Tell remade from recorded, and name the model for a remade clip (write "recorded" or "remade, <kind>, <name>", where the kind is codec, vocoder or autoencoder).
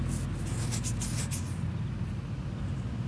recorded